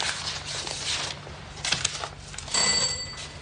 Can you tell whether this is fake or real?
real